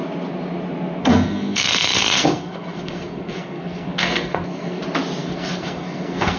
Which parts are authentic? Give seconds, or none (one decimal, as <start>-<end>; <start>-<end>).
0.0-1.0; 4.8-5.2